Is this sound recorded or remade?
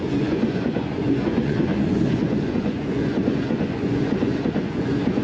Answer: remade